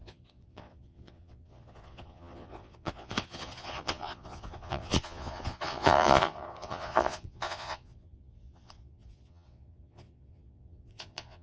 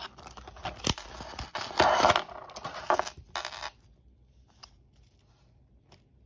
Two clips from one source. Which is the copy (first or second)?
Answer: first